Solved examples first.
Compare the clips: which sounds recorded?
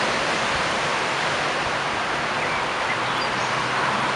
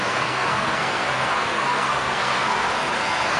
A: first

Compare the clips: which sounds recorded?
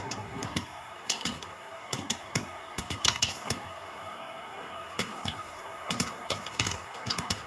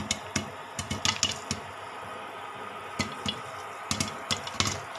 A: second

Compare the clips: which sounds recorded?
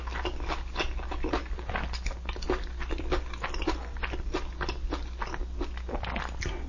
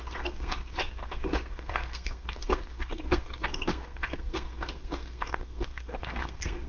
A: first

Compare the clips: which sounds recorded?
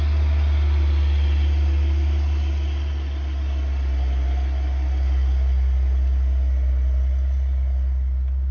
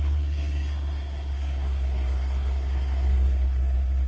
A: first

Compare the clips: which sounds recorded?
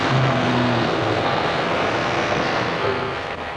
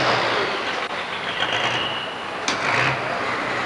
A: second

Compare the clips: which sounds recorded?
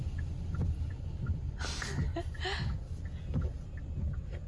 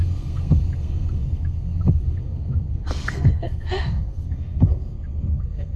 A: first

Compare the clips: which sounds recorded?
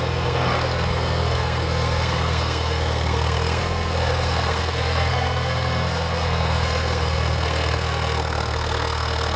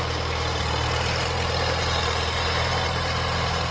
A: second